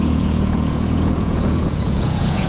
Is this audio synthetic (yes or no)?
yes